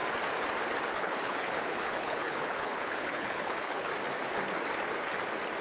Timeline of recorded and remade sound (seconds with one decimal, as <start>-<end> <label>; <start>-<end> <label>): 0.0-0.9 recorded; 0.9-3.9 remade; 3.9-5.6 recorded